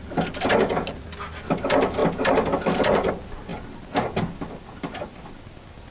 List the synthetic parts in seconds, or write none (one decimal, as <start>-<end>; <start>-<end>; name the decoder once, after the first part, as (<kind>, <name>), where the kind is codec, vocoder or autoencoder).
none